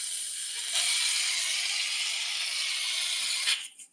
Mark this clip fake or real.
real